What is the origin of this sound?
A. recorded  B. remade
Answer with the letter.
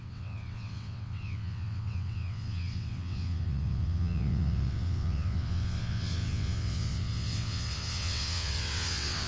B